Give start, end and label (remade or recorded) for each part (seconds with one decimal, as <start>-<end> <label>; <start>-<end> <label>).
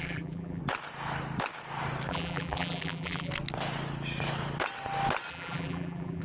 0.0-0.6 remade; 0.6-2.1 recorded; 2.1-3.3 remade; 3.3-5.3 recorded; 5.3-6.2 remade